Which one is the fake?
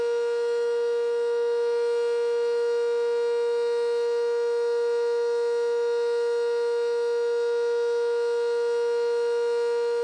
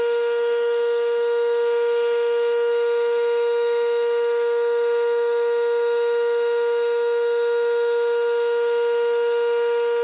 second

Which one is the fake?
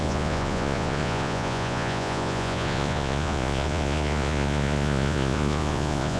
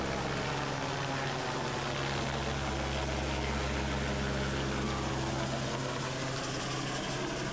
first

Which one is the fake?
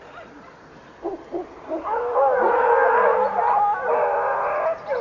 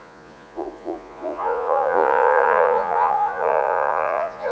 second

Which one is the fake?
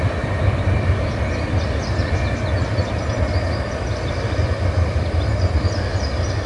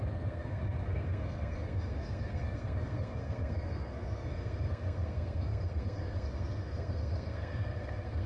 second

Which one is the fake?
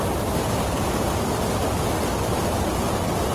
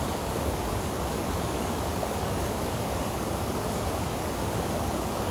second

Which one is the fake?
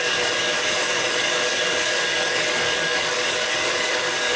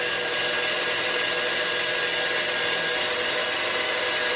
first